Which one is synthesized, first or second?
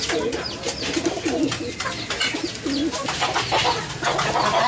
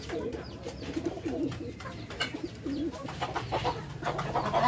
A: second